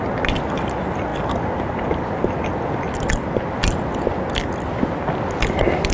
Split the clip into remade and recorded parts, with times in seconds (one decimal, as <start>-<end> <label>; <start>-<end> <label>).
0.0-5.9 recorded